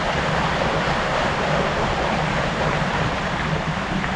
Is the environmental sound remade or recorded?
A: recorded